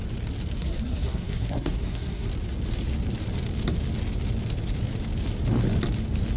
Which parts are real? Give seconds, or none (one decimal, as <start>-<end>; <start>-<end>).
0.0-0.6; 2.3-6.4